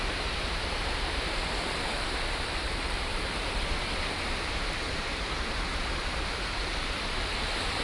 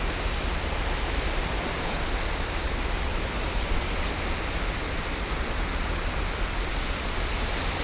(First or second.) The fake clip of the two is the first